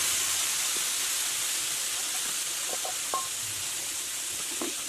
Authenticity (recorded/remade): remade